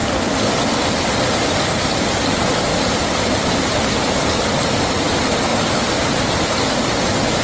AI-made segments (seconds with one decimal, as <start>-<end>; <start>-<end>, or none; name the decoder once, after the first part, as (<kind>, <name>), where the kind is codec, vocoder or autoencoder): 5.5-6.2 (vocoder, BigVGAN v2)